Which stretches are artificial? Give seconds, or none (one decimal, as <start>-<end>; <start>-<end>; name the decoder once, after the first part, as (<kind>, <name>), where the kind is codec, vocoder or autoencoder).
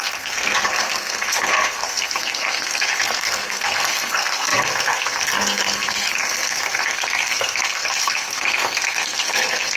0.0-9.8 (codec, SNAC)